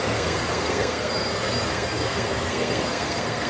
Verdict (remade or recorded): remade